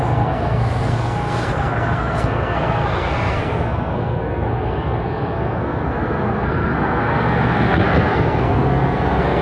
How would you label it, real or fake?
fake